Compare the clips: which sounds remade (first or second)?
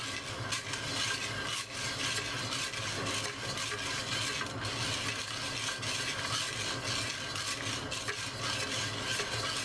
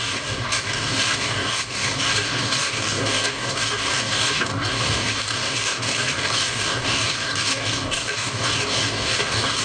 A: second